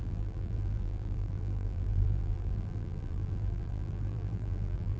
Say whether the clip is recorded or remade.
remade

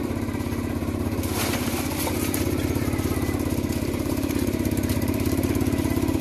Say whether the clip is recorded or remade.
remade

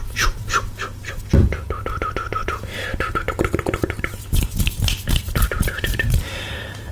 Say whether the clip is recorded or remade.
remade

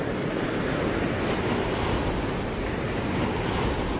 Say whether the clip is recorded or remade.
recorded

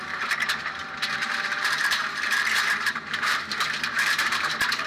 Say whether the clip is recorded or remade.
remade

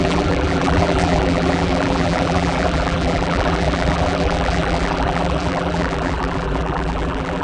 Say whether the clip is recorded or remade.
remade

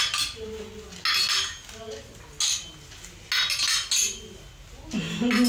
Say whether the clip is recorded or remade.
recorded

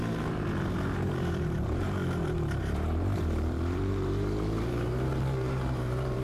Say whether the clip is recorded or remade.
remade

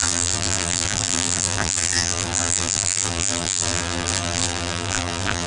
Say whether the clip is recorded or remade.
remade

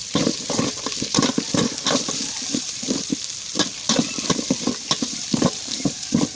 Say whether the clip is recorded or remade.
remade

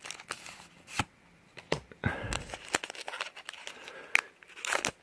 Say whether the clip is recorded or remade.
recorded